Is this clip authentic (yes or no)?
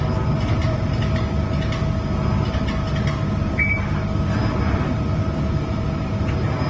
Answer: yes